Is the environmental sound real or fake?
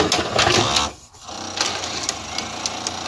real